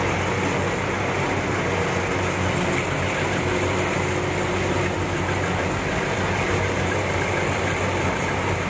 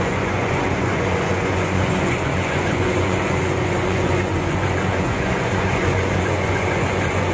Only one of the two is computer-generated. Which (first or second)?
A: second